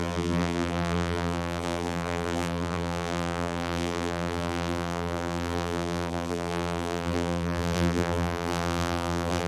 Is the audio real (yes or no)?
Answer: no